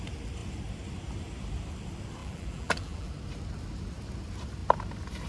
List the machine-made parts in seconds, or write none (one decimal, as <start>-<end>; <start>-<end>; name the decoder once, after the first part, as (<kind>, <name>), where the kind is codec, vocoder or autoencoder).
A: 2.2-3.1 (vocoder, BigVGAN v2)